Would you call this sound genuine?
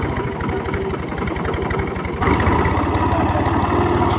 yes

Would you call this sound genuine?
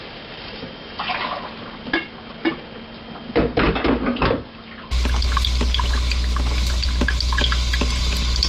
yes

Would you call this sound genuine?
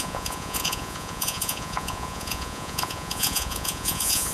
no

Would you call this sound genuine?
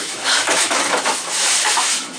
no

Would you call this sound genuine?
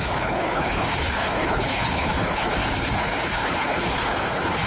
no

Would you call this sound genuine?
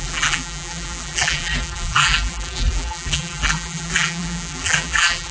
no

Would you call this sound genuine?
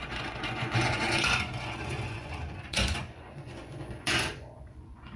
no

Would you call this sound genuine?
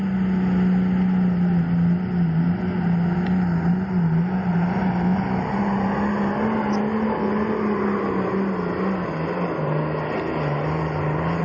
yes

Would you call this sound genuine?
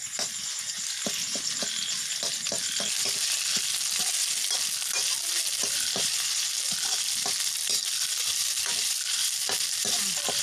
yes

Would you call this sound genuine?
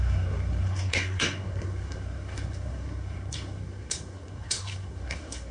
no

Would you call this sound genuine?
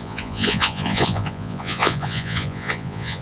no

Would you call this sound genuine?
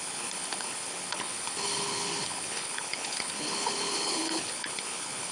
no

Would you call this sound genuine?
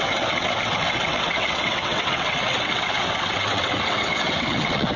no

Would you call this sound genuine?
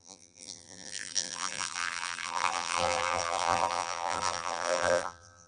no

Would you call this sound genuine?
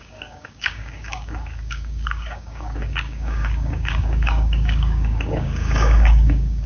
no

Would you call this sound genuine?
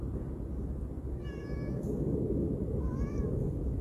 yes